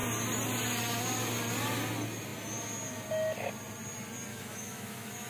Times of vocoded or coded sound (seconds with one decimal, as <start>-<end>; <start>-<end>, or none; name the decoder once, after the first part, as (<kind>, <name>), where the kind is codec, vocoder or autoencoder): 4.3-5.3 (autoencoder, DAC-VAE)